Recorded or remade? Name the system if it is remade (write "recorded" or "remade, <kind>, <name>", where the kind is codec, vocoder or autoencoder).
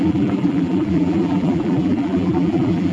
remade, vocoder, BigVGAN v2